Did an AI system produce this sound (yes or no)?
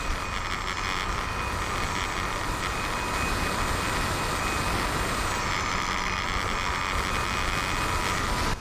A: no